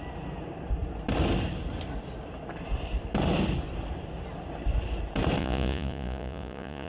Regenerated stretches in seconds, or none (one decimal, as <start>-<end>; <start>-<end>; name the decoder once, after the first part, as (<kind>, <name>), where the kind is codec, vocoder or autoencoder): 5.4-6.9 (vocoder, Vocos)